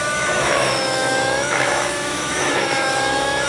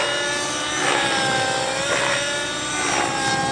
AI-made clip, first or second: first